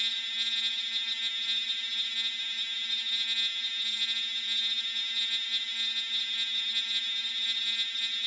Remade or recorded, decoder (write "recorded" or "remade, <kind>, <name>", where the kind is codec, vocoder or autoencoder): remade, vocoder, Vocos